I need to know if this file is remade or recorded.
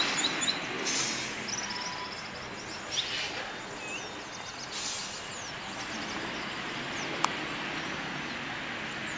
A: recorded